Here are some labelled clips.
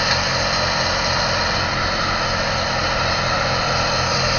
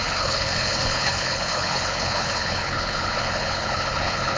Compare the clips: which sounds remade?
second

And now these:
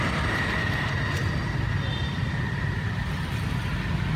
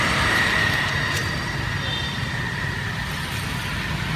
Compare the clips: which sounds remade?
first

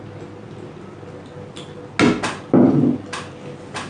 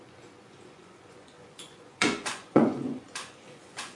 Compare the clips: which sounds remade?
second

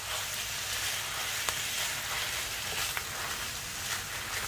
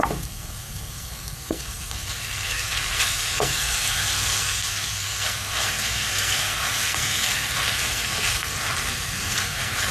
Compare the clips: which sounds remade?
second